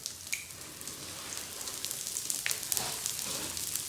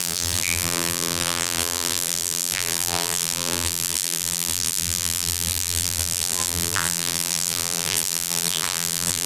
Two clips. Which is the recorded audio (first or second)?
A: first